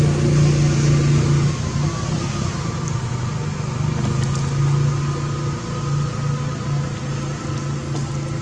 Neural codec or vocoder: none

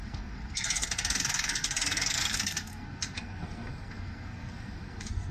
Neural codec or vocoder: codec, SNAC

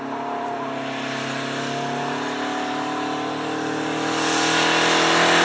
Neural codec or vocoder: none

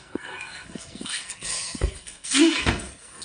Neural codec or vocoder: codec, SNAC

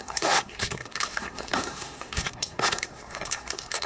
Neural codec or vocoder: codec, SNAC